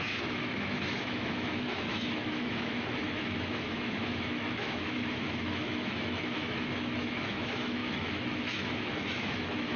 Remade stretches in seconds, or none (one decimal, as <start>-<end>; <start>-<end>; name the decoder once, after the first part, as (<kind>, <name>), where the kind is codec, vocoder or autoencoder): 0.0-9.8 (autoencoder, DAC-VAE)